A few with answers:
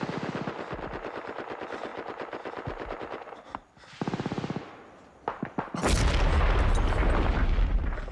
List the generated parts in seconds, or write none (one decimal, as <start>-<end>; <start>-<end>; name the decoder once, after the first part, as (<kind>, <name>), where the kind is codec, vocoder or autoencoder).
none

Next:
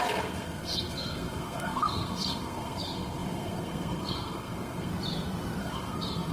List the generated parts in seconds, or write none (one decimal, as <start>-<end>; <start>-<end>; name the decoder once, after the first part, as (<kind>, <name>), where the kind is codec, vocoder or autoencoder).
0.0-4.9 (codec, SNAC); 5.6-6.3

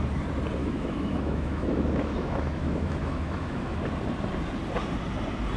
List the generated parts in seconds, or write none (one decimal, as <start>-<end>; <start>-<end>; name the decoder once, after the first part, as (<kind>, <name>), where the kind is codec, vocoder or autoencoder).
0.6-3.8 (autoencoder, DAC-VAE)

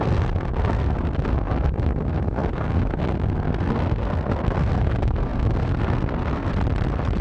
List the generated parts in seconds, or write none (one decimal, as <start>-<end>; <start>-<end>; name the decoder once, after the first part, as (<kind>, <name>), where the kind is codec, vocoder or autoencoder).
0.0-6.5 (codec, SNAC)

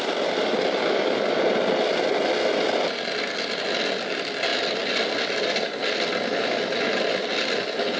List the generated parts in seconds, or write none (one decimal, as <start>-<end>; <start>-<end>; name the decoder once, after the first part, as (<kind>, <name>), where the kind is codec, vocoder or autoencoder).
none

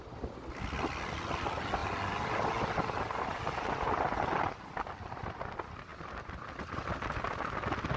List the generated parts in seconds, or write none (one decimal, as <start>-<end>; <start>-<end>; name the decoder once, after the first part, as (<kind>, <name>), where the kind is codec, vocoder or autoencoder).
none

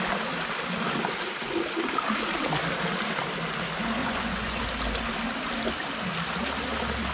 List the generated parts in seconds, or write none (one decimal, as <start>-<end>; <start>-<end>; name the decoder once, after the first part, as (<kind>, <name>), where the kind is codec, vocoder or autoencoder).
4.0-4.6 (vocoder, Vocos)